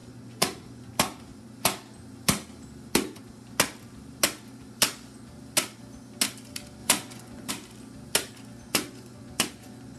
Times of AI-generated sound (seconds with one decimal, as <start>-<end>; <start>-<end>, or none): 0.0-0.9; 6.8-7.5; 8.7-10.0